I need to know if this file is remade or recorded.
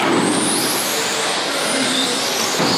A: recorded